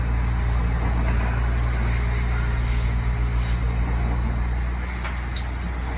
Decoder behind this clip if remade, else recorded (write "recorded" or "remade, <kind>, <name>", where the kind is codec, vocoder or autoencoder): recorded